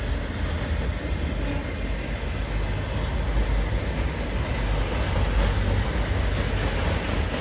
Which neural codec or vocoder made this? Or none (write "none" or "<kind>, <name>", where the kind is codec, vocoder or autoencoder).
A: none